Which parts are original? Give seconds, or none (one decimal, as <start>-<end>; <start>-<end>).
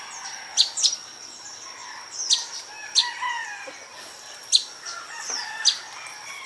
0.0-6.5